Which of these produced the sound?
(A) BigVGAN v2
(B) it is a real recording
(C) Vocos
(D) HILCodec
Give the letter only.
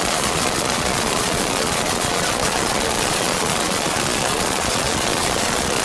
C